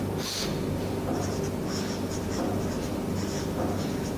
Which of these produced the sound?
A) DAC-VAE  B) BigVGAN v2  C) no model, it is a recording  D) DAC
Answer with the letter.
C